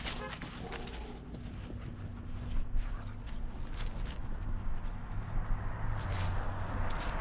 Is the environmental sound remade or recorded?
recorded